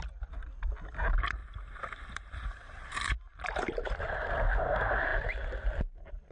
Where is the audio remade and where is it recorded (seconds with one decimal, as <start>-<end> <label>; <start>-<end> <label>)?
0.0-1.4 recorded; 1.4-4.0 remade; 4.0-6.3 recorded